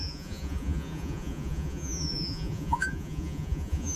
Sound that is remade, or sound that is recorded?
remade